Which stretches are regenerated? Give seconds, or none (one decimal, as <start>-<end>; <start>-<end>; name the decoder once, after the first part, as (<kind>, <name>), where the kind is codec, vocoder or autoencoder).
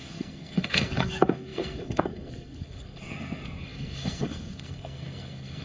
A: 0.0-5.6 (codec, SNAC)